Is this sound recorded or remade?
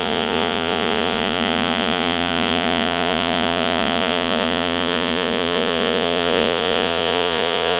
remade